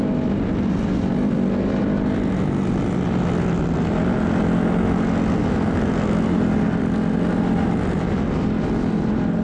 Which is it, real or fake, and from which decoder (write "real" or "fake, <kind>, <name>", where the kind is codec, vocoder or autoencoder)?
real